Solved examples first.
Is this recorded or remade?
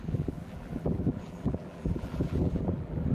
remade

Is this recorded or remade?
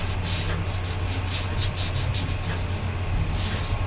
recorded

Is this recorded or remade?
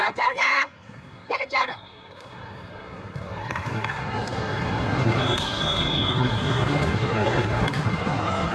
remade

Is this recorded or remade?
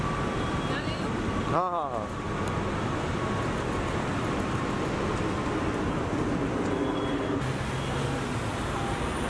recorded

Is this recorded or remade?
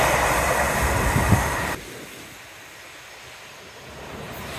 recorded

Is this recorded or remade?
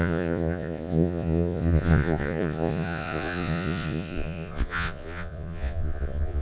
remade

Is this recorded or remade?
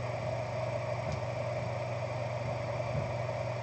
recorded